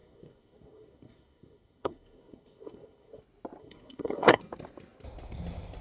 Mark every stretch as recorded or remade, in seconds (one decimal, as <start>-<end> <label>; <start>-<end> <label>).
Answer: 0.0-3.2 remade; 3.2-3.6 recorded; 3.6-4.4 remade; 4.4-5.8 recorded